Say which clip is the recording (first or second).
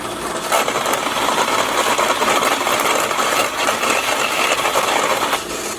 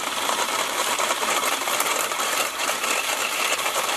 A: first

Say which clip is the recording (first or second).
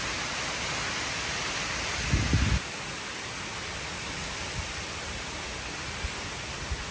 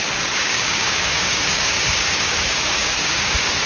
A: first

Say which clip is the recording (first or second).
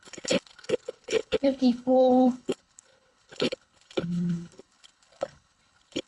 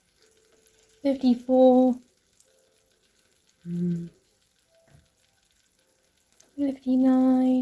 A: second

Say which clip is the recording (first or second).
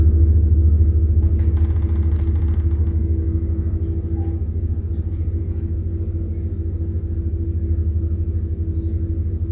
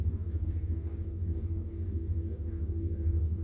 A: first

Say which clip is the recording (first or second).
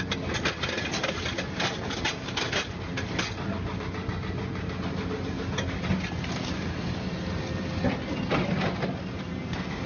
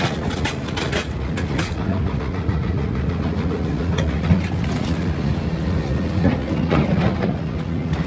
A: first